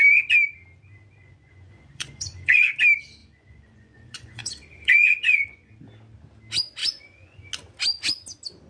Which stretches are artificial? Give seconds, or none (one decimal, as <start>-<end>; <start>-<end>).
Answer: 1.2-2.7; 3.2-5.7; 6.8-7.5